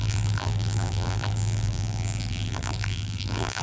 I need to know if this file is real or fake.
fake